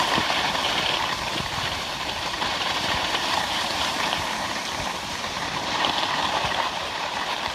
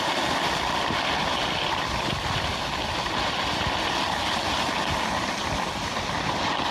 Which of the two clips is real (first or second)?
second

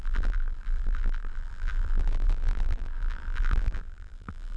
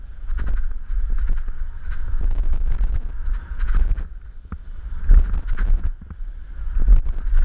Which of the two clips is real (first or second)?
second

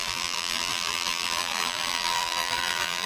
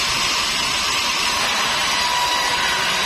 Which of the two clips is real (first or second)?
second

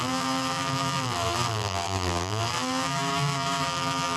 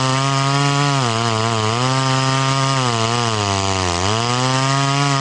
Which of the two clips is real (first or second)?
second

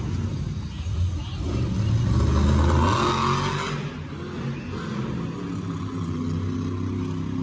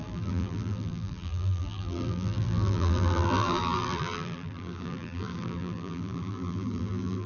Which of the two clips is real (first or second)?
first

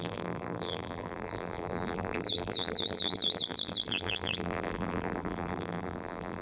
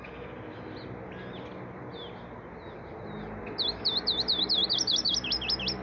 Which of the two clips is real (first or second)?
second